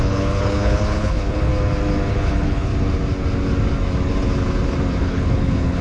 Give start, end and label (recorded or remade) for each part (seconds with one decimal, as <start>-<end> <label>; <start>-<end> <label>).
0.0-1.5 remade; 1.5-2.1 recorded; 2.1-2.7 remade; 2.7-5.0 recorded; 5.0-5.8 remade